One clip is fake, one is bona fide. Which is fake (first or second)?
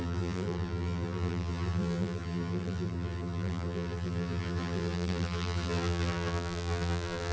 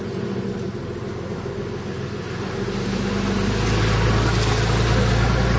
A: first